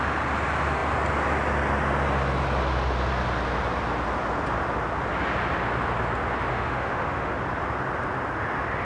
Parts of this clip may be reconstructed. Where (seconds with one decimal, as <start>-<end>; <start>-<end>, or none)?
6.5-7.3